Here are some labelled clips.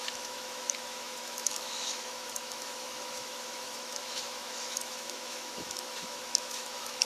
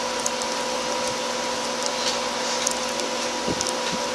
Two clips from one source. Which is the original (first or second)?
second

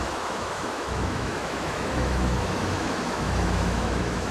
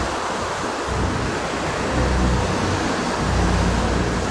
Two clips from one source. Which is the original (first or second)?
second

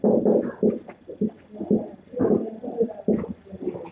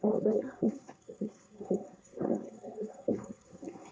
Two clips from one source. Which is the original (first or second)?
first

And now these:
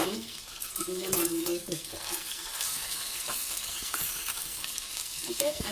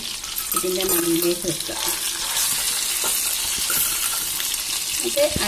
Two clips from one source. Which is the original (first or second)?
second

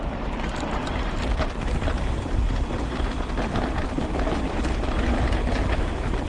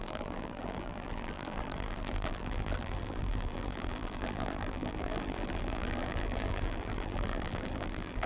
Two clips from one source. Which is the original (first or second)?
first